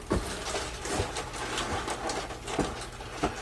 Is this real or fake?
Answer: real